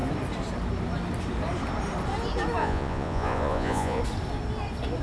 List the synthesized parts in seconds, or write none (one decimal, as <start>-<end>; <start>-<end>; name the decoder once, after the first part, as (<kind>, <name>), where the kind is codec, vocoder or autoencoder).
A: 2.6-4.0 (vocoder, Vocos)